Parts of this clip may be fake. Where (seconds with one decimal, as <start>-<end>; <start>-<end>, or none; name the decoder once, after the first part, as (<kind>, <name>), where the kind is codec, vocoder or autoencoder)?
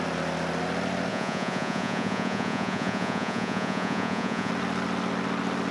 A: 1.1-4.5 (vocoder, Vocos)